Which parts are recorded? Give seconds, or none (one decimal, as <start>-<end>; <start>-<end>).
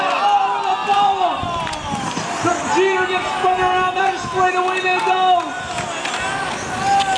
0.0-7.2